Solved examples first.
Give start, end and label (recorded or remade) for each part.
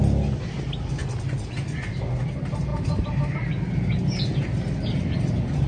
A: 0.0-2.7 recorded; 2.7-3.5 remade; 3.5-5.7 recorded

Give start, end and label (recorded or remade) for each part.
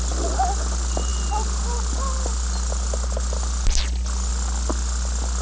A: 0.0-5.4 recorded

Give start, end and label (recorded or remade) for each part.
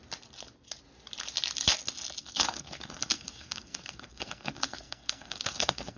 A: 0.0-2.2 recorded; 2.2-6.0 remade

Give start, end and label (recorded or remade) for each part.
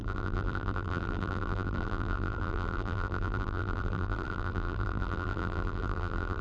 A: 0.0-6.4 remade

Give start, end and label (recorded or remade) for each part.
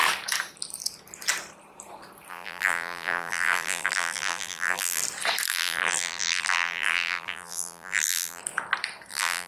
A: 0.0-2.3 recorded; 2.3-5.0 remade; 5.0-5.5 recorded; 5.5-8.4 remade; 8.4-9.1 recorded; 9.1-9.5 remade